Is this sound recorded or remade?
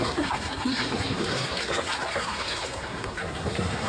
remade